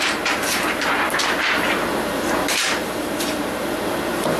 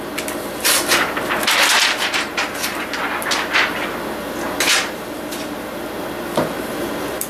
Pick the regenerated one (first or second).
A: first